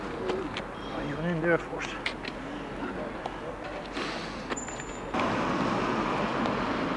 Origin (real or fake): real